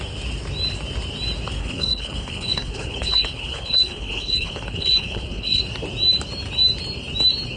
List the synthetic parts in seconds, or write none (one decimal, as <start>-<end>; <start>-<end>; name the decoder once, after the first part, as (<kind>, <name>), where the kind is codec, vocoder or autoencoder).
1.6-5.6 (codec, HILCodec)